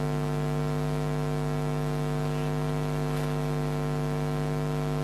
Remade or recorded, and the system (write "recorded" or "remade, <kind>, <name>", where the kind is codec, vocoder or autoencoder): recorded